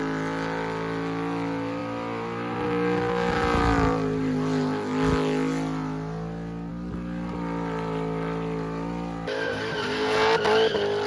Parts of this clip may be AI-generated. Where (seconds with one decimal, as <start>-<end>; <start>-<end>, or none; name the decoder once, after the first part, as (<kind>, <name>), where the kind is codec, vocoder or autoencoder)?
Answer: none